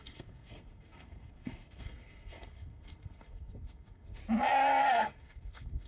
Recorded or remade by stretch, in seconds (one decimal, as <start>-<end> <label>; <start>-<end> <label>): 0.0-4.2 remade; 4.2-4.8 recorded; 4.8-5.9 remade